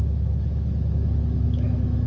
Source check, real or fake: fake